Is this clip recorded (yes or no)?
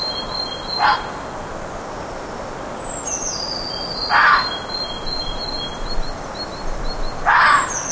yes